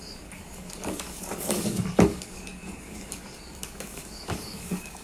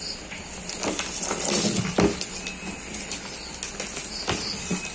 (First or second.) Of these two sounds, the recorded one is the second